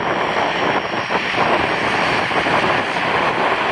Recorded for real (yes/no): yes